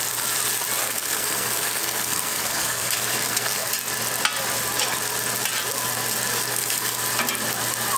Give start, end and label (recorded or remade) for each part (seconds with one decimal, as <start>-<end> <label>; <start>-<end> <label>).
0.0-0.8 recorded; 0.8-3.7 remade; 3.7-6.5 recorded; 6.5-7.0 remade; 7.0-8.0 recorded